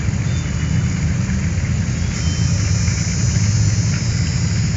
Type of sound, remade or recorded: recorded